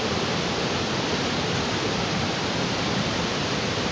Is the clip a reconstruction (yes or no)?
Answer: no